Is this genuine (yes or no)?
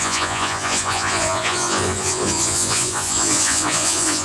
no